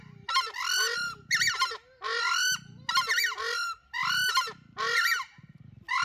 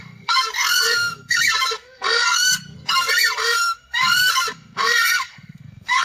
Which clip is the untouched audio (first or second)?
first